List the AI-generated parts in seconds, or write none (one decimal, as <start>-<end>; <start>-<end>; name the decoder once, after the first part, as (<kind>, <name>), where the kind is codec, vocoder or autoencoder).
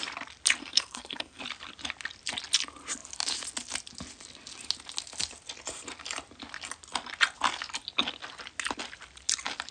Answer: 0.6-1.4 (codec, SNAC)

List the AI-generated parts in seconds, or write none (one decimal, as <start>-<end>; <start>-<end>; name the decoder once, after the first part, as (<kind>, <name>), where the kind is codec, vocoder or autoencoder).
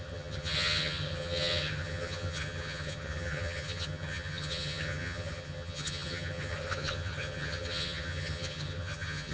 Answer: 0.0-9.3 (vocoder, HiFi-GAN)